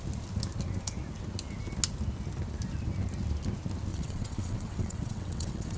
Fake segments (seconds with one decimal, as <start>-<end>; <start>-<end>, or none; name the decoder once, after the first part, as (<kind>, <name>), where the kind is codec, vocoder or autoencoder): 3.9-5.8 (vocoder, WaveNeXt)